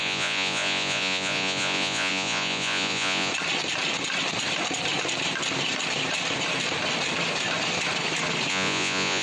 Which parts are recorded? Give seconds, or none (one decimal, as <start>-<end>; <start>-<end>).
3.3-8.5